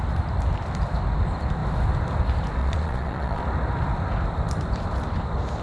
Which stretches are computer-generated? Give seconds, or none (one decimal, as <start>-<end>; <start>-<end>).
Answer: 2.6-3.4